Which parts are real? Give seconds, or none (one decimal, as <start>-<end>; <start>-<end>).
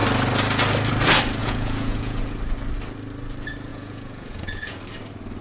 0.0-1.4; 2.2-3.7; 4.8-5.4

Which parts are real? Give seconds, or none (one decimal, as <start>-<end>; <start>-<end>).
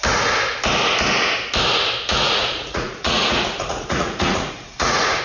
0.0-2.1